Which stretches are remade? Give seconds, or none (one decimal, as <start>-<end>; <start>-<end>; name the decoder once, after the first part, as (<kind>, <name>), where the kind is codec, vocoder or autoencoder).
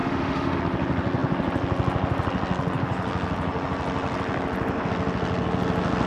0.0-0.6 (autoencoder, DAC-VAE)